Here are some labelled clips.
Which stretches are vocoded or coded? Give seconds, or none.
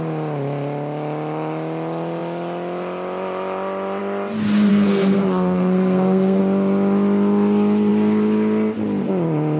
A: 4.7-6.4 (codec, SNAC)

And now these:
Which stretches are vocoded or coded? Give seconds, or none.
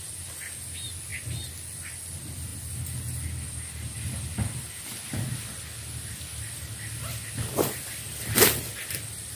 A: none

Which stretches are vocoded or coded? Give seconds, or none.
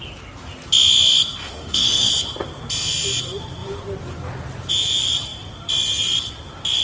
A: 1.4-2.1 (autoencoder, DAC-VAE)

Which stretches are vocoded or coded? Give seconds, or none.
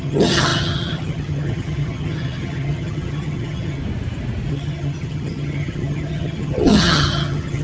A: 0.0-3.8 (vocoder, HiFi-GAN); 4.5-7.6